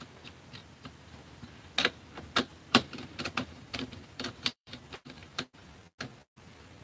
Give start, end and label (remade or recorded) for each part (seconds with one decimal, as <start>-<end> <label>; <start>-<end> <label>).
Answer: 0.0-0.6 recorded; 0.6-1.7 remade; 1.7-2.5 recorded; 2.5-5.7 remade; 5.7-6.8 recorded